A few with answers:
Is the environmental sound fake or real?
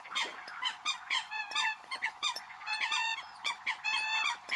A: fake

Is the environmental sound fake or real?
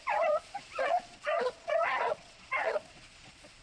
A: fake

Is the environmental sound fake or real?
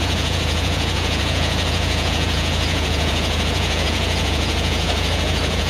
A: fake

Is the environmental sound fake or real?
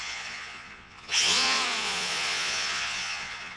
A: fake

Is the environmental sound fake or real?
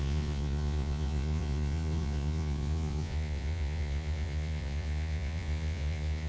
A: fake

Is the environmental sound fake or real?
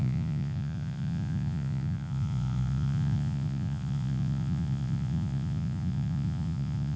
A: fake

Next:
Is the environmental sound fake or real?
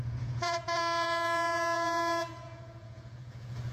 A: fake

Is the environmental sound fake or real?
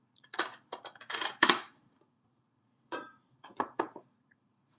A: fake